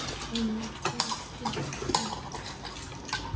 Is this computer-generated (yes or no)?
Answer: no